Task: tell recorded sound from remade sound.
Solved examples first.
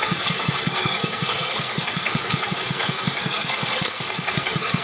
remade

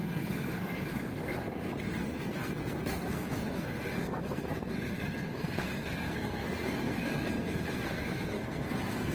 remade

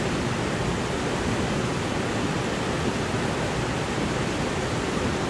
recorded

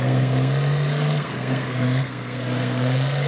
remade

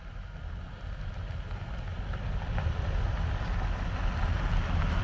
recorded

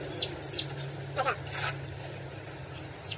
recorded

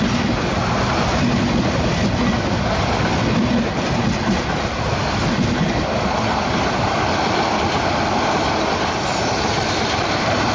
recorded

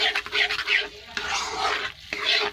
recorded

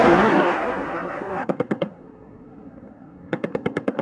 remade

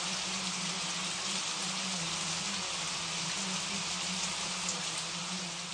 recorded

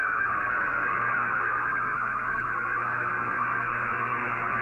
remade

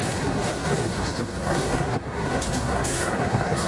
remade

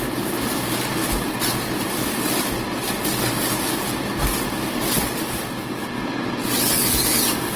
recorded